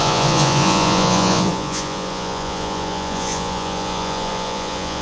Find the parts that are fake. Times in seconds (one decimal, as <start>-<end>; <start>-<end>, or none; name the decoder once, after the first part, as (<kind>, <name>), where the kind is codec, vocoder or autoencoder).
0.0-5.0 (vocoder, Vocos)